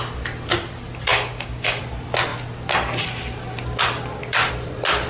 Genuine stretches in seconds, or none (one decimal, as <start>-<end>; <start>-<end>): 0.0-1.1; 1.8-5.1